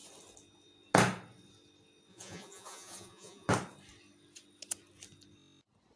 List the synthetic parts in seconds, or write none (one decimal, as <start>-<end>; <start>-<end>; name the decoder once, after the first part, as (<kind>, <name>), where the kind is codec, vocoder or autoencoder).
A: 2.1-3.5 (vocoder, Vocos)